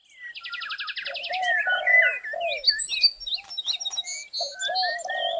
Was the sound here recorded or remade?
recorded